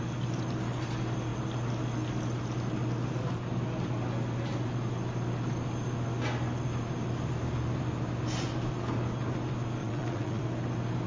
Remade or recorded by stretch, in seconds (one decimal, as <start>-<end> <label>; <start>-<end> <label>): 0.0-9.8 recorded; 9.8-10.4 remade; 10.4-11.1 recorded